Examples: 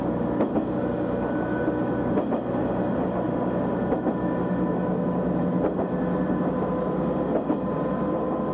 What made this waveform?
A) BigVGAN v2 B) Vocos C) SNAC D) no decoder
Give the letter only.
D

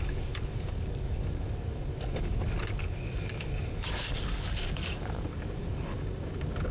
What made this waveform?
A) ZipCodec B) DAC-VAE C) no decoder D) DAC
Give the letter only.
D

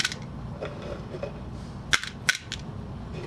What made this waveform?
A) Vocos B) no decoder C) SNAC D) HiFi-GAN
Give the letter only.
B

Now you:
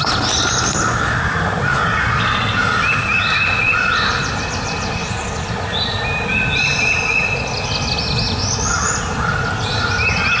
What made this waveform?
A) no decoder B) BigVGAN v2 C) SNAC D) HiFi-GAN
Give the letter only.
A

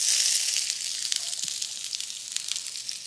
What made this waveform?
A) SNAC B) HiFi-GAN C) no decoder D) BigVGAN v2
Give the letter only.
C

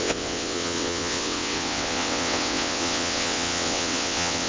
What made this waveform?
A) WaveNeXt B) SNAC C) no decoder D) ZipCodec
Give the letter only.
A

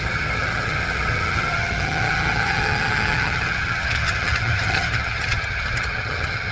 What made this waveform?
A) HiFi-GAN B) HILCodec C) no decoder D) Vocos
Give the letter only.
A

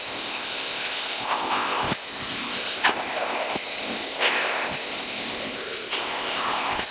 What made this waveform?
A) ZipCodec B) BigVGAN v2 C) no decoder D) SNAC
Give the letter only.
A